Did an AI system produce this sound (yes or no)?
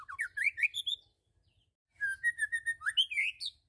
no